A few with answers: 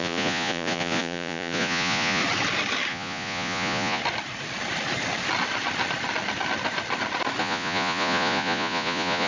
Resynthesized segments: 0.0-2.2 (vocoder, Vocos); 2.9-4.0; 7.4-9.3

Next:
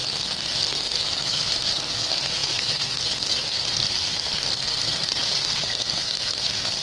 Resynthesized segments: 0.0-6.8 (codec, SNAC)

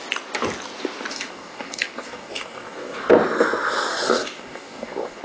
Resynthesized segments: 1.1-3.1 (codec, DAC); 3.9-5.2

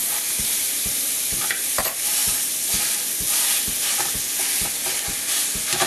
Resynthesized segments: 0.0-2.2 (vocoder, BigVGAN v2)

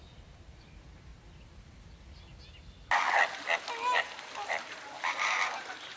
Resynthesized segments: 0.0-1.1 (vocoder, BigVGAN v2); 4.0-6.0

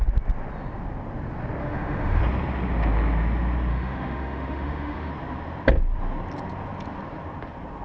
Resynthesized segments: 1.6-2.2 (autoencoder, DAC-VAE); 3.7-5.1

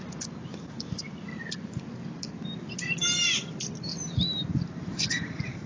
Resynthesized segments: 0.4-1.8 (vocoder, BigVGAN v2)